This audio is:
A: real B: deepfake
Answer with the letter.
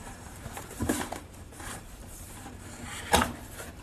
B